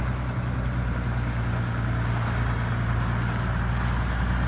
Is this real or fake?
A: real